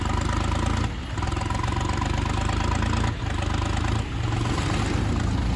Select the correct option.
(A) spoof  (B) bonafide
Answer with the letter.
B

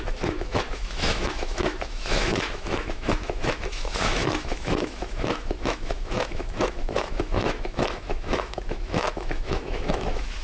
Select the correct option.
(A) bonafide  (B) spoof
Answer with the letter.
B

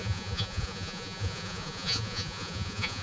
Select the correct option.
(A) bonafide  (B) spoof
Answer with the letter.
B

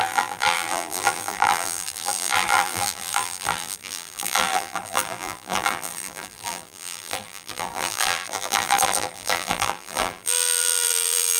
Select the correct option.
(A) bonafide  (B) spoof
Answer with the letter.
B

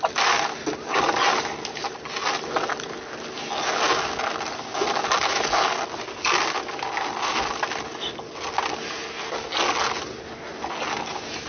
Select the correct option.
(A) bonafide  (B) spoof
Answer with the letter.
A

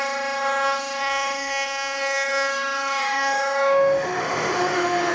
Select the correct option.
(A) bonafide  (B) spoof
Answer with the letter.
B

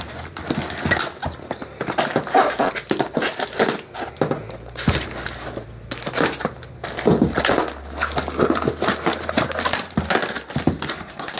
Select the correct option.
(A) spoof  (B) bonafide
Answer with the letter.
B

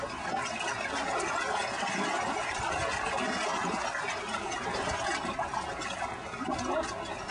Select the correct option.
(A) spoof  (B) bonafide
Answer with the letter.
B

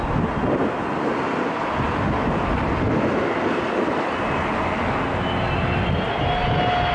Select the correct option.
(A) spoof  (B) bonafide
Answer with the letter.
B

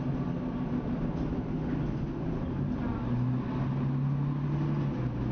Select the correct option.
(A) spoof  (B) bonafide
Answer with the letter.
B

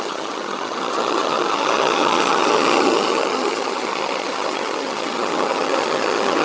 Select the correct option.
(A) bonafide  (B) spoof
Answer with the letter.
B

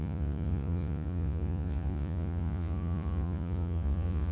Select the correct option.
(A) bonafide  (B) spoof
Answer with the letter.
B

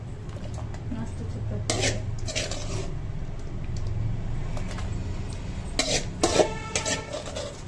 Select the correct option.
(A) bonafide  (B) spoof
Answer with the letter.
A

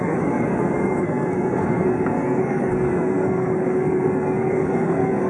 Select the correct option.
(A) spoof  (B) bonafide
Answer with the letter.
A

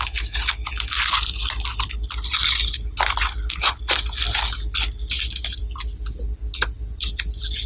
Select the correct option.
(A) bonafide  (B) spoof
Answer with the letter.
A